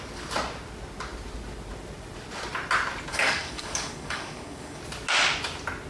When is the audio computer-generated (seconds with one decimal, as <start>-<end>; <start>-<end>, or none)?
3.1-4.8